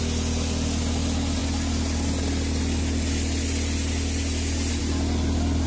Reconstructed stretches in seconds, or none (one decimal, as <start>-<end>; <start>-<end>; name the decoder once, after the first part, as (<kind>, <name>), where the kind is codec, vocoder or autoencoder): none